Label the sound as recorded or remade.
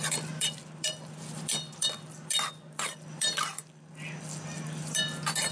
remade